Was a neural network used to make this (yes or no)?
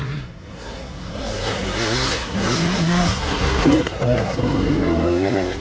yes